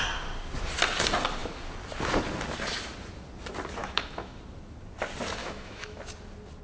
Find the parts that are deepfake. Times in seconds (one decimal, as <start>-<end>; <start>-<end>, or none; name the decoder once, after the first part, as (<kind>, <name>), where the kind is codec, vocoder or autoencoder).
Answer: 3.8-4.4 (autoencoder, DAC-VAE); 5.4-6.0